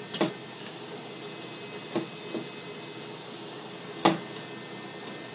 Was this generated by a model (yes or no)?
no